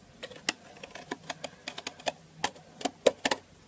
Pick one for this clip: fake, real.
real